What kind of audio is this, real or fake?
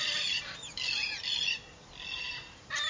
real